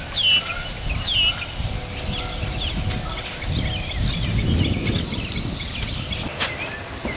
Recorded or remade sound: recorded